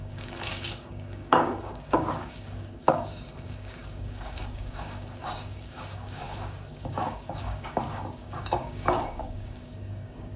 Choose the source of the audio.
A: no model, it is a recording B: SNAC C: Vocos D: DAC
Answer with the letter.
D